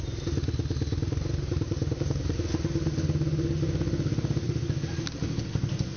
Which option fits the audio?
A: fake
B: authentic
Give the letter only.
B